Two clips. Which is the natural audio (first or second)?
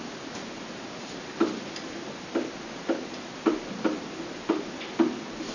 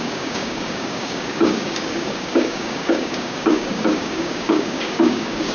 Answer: first